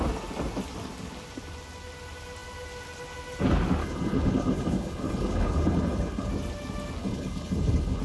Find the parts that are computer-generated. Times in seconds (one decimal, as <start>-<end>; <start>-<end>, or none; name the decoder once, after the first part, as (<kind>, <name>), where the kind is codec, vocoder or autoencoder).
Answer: 3.8-6.3 (codec, HILCodec); 7.0-8.0